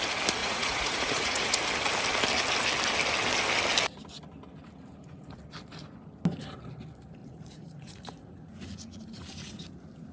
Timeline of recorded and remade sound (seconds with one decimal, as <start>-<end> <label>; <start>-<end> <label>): 0.0-0.4 recorded; 0.4-1.5 remade; 1.5-7.2 recorded; 7.2-9.2 remade; 9.2-10.1 recorded